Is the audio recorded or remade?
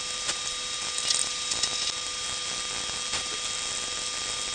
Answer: recorded